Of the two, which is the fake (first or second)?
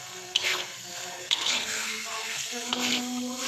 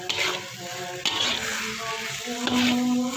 first